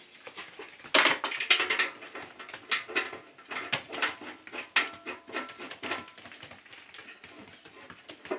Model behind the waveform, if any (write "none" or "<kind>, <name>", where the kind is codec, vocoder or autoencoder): none